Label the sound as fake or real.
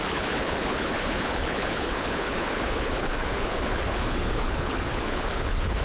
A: fake